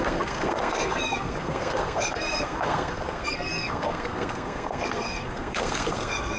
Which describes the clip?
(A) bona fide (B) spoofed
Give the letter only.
B